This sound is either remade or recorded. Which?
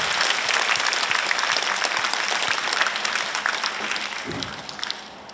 recorded